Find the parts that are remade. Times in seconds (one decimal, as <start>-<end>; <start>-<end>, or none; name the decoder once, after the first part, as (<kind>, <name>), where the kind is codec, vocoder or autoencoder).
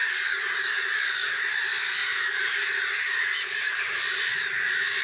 2.0-4.0 (vocoder, BigVGAN v2)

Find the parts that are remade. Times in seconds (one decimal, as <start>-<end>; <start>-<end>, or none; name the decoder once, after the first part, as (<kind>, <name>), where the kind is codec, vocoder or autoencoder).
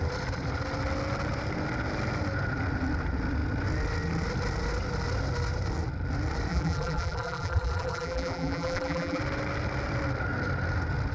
6.5-9.2 (vocoder, BigVGAN v2)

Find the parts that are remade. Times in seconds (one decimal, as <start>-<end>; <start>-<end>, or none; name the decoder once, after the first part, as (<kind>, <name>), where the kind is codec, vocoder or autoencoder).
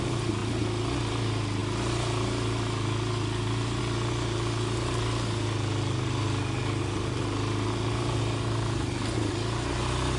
none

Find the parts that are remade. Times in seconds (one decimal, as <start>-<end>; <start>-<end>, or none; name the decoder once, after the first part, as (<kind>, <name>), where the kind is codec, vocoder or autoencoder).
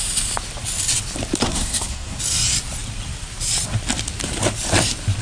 1.4-2.2 (codec, SNAC)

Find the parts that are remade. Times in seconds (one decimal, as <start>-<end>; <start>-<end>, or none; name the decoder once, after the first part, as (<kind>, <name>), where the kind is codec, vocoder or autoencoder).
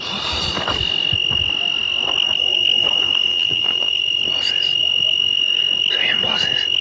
3.3-3.9 (vocoder, BigVGAN v2)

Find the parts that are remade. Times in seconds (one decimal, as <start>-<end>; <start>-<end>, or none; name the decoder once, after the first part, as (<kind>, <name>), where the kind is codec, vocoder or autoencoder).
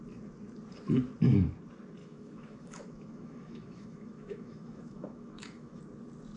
2.0-5.8 (autoencoder, DAC-VAE)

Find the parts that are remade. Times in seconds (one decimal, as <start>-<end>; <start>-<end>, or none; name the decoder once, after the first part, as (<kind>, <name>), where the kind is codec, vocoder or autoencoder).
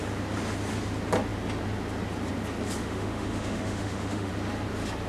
2.8-4.3 (autoencoder, DAC-VAE)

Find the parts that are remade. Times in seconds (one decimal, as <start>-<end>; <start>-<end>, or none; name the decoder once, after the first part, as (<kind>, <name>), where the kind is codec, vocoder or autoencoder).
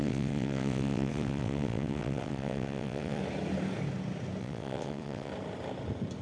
0.0-3.2 (vocoder, WaveNeXt); 4.4-5.3